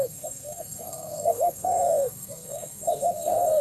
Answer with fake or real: fake